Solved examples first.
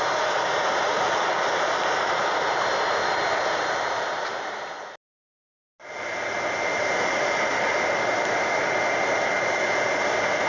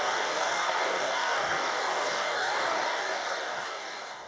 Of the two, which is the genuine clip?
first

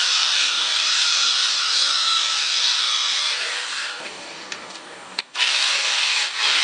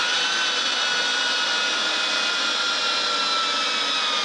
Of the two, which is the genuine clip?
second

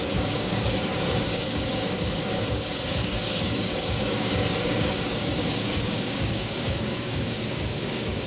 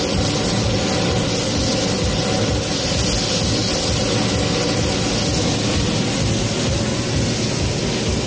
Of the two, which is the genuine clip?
second